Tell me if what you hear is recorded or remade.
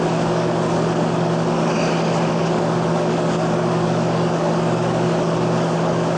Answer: remade